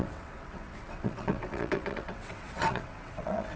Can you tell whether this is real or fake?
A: fake